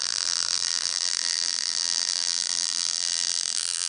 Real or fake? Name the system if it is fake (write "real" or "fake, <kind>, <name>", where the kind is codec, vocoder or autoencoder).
fake, vocoder, BigVGAN v2